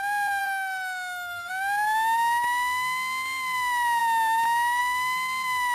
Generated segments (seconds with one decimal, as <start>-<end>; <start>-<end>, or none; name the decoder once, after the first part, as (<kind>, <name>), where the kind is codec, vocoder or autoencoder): 0.4-1.5 (autoencoder, DAC-VAE)

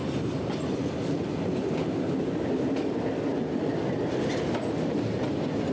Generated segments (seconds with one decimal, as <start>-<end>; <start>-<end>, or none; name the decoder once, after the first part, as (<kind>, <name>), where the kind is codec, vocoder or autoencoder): none

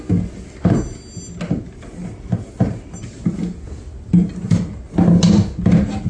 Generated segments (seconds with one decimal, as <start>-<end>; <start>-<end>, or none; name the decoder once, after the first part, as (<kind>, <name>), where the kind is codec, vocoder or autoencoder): none

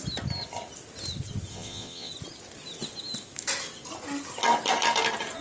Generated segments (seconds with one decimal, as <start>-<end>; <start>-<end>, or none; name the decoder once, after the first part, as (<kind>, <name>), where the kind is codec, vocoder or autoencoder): 1.5-2.1 (vocoder, Vocos)